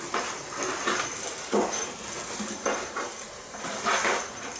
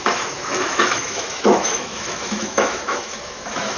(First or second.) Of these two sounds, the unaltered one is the first